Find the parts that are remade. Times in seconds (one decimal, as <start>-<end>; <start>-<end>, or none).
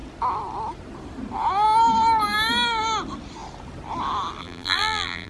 4.4-5.3